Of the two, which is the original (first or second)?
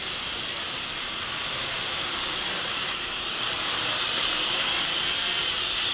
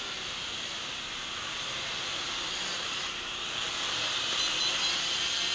second